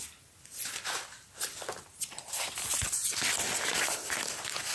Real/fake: real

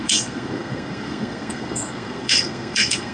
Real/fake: fake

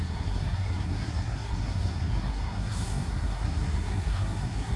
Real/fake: fake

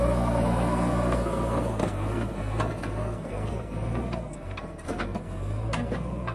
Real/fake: fake